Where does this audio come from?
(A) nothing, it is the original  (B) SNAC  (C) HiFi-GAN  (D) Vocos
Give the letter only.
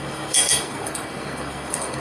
B